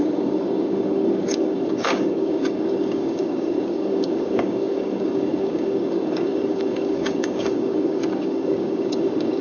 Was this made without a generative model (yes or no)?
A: no